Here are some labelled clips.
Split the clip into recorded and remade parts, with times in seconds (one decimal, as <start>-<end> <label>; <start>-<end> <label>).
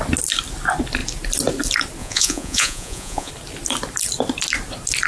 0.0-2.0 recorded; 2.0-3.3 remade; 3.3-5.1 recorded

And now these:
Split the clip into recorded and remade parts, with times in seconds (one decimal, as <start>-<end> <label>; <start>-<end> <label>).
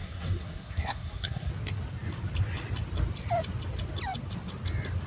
0.0-1.5 remade; 1.5-5.1 recorded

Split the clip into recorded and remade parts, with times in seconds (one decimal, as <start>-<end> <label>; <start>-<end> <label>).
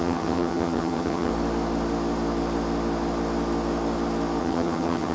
0.0-1.3 remade; 1.3-4.4 recorded; 4.4-5.1 remade